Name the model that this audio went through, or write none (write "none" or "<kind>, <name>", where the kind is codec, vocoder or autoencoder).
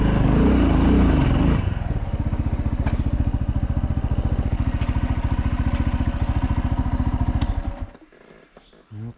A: none